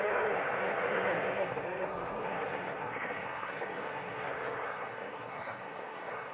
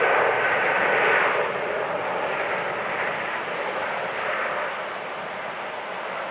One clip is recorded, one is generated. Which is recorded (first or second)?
second